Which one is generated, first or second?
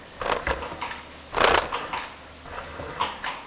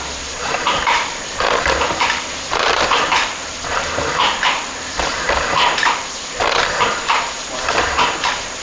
second